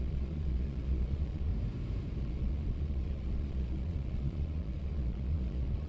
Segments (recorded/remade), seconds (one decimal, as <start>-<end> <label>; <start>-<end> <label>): 0.0-1.5 remade; 1.5-2.2 recorded; 2.2-5.9 remade

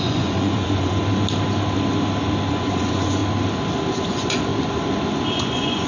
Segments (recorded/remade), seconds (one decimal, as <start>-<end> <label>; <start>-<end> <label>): 0.0-1.0 remade; 1.0-2.5 recorded; 2.5-3.2 remade; 3.2-3.9 recorded; 3.9-4.5 remade; 4.5-5.3 recorded; 5.3-5.9 remade

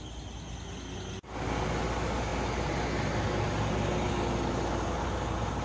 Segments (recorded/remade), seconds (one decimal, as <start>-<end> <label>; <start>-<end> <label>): 0.0-5.6 recorded

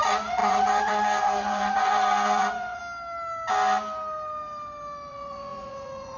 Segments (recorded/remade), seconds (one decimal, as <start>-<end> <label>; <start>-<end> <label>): 0.0-2.8 remade; 2.8-5.1 recorded; 5.1-6.2 remade

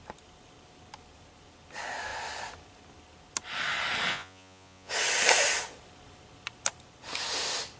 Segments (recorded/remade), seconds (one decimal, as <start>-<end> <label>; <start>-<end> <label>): 0.0-4.1 recorded; 4.1-4.9 remade; 4.9-7.8 recorded

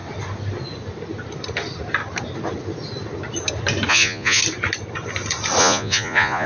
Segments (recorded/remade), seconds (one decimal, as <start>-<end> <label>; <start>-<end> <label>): 0.0-3.9 recorded; 3.9-4.4 remade; 4.4-5.6 recorded; 5.6-6.5 remade

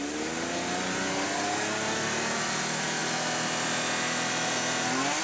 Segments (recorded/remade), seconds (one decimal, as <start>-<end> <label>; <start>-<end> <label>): 0.0-5.2 recorded